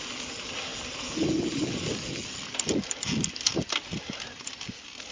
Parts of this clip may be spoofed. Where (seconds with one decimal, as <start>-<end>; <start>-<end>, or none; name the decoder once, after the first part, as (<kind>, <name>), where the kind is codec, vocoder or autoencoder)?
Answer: none